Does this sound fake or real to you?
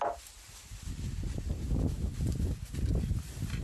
real